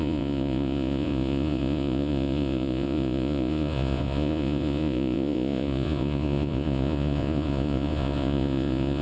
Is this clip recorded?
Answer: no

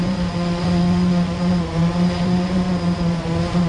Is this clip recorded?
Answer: no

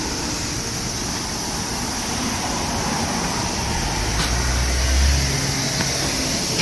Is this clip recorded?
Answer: yes